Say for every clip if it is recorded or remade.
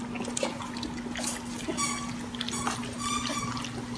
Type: recorded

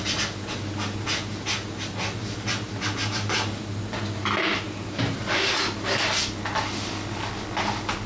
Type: recorded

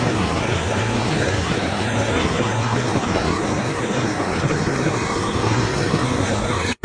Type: remade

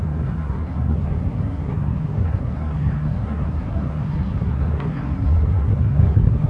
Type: remade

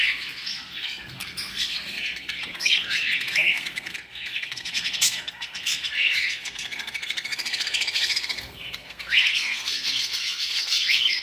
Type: remade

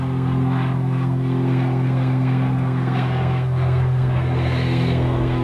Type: remade